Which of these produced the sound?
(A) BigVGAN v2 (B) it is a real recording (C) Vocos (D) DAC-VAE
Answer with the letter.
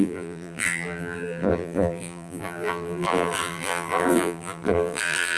A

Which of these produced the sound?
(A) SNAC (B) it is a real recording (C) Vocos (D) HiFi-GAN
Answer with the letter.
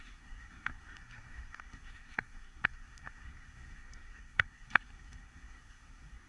A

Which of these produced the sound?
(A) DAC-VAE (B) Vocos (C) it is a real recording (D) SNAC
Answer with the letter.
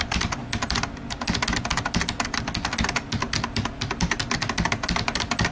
C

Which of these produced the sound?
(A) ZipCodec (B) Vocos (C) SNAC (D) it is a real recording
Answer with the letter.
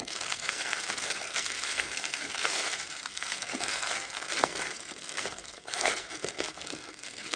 C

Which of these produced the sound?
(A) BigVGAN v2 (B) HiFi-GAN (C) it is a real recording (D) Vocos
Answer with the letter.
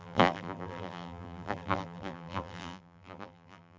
A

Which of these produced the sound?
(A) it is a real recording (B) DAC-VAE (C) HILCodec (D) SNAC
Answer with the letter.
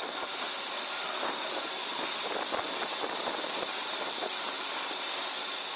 A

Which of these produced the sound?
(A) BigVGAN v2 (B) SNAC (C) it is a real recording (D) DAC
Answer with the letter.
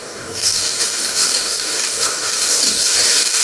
D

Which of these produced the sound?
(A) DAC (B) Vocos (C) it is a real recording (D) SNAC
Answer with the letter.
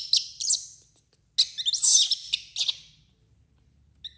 C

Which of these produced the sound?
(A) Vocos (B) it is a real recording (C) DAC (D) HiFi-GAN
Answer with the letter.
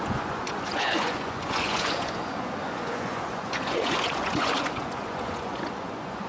A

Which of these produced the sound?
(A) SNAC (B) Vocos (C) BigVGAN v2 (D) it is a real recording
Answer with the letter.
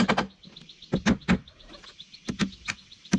D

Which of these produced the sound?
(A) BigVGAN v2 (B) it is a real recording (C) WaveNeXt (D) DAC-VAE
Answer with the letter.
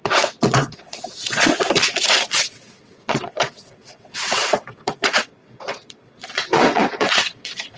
C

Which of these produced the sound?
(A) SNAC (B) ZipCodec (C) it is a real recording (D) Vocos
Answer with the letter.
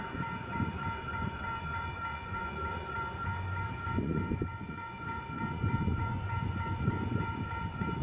D